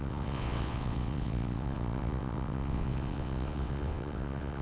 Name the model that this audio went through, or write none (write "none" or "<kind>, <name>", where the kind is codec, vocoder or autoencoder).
vocoder, WaveNeXt